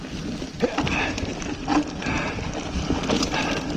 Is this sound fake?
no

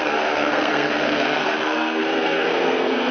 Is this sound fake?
yes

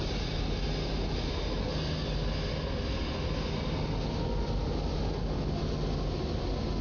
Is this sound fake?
no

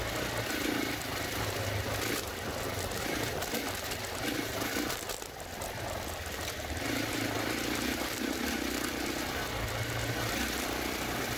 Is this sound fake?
no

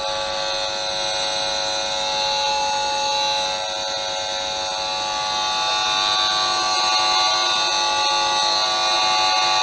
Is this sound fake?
no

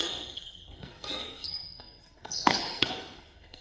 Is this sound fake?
yes